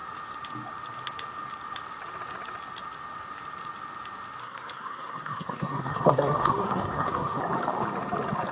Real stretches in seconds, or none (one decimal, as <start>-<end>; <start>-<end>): 0.0-4.4; 7.4-8.5